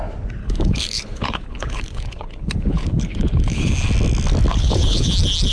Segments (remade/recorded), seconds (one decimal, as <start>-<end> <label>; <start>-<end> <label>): 0.0-0.4 recorded; 0.4-3.7 remade; 3.7-4.5 recorded; 4.5-5.1 remade; 5.1-5.5 recorded